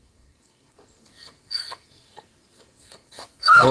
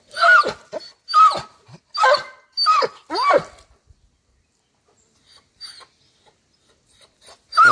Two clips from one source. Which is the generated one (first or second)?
first